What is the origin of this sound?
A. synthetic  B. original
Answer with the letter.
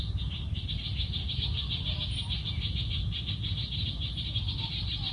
B